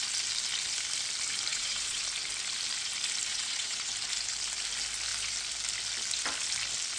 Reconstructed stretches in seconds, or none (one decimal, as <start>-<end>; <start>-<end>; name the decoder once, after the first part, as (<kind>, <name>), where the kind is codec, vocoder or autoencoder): 1.5-2.0 (vocoder, WaveNeXt); 3.3-3.9